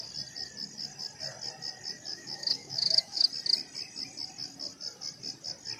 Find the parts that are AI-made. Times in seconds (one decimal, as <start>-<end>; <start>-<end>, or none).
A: 2.1-3.3